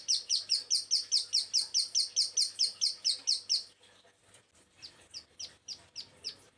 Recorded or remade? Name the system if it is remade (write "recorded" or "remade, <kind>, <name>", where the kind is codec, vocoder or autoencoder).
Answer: recorded